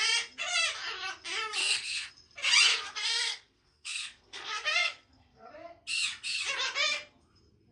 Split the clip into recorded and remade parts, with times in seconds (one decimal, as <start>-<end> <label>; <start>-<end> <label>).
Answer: 0.0-1.6 recorded; 1.6-2.1 remade; 2.1-2.7 recorded; 2.7-5.5 remade; 5.5-7.7 recorded